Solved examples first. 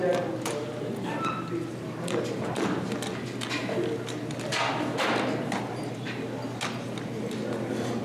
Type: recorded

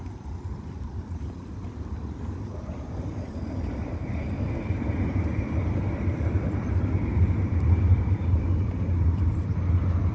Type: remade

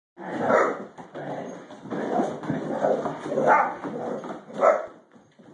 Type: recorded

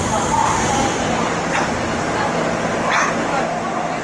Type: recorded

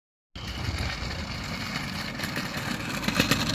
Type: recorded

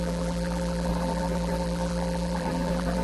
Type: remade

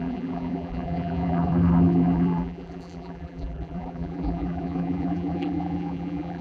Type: remade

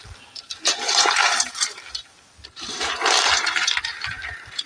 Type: remade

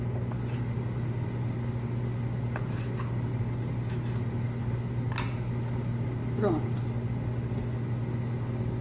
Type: recorded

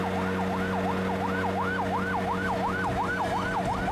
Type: recorded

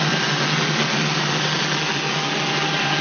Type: recorded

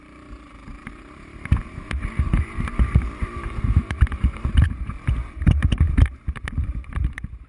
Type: remade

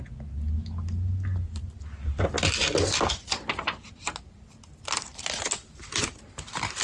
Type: recorded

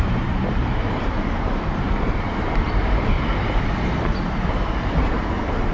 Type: remade